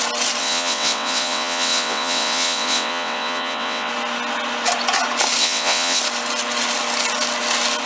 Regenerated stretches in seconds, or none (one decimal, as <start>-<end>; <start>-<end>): 0.4-3.9; 5.4-6.0